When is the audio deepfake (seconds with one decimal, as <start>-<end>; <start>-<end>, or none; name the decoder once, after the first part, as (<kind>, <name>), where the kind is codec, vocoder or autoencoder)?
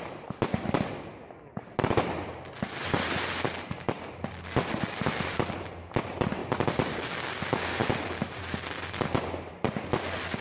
none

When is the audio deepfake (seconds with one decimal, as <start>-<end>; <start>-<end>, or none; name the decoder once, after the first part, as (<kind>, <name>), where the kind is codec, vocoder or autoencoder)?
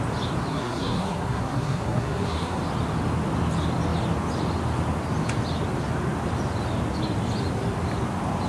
0.5-2.6 (codec, SNAC)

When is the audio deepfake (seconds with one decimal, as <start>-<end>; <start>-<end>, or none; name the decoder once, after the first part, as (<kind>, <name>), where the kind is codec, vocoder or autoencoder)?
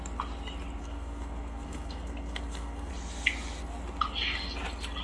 0.8-2.9 (codec, SNAC)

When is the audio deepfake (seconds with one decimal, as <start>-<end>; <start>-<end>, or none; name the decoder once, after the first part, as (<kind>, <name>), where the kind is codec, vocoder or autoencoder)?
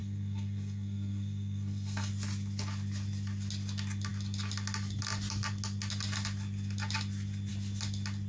0.0-2.1 (codec, SNAC)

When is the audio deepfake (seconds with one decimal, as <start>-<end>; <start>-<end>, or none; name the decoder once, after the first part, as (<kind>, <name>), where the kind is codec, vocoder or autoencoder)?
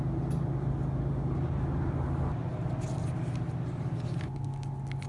none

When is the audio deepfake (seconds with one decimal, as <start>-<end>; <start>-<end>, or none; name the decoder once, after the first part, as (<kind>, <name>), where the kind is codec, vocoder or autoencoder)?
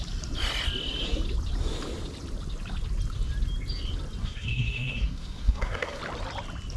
4.2-6.0 (codec, SNAC)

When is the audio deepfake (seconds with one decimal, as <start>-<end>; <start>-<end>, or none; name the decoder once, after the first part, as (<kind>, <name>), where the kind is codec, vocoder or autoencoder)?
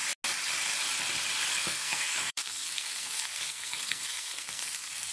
1.6-5.1 (codec, SNAC)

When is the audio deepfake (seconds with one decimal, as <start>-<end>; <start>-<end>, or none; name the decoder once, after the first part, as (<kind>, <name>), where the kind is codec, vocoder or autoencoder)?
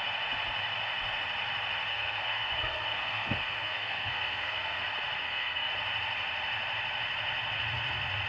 1.9-4.8 (codec, SNAC); 5.2-5.7